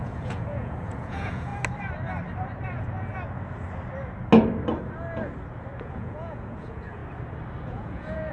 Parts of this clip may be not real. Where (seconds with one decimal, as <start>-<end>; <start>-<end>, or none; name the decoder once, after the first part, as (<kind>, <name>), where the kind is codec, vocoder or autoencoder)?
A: 0.0-1.5 (vocoder, Vocos); 5.8-7.0; 7.7-8.3